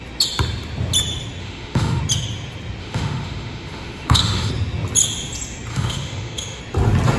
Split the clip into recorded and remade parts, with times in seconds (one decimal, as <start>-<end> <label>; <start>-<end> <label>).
0.0-1.4 recorded; 1.4-2.0 remade; 2.0-2.8 recorded; 2.8-4.5 remade; 4.5-5.7 recorded; 5.7-6.6 remade; 6.6-7.2 recorded